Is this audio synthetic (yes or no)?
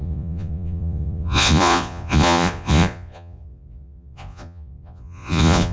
yes